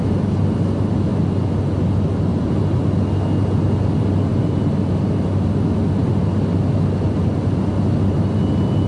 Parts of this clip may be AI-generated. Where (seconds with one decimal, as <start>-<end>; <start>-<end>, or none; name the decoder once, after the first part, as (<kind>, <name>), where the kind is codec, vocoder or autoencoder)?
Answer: 2.3-2.9 (vocoder, BigVGAN v2); 4.3-4.9